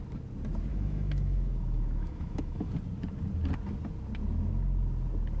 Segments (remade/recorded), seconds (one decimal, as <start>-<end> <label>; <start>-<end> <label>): 0.0-0.7 recorded; 0.7-2.7 remade; 2.7-5.4 recorded